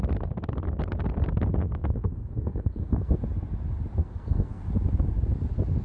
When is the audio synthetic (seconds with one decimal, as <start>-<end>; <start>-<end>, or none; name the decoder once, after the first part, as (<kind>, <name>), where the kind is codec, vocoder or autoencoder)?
1.6-3.2 (codec, SNAC); 4.0-4.6